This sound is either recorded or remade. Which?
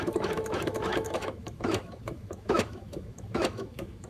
remade